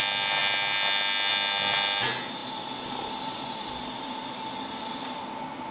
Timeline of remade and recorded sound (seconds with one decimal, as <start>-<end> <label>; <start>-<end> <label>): 0.0-5.7 recorded